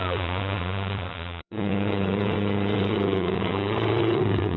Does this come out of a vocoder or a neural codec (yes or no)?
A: yes